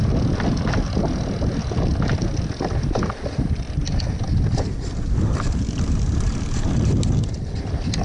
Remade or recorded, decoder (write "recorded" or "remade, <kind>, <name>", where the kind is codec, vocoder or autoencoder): recorded